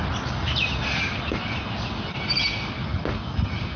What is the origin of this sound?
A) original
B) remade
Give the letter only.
A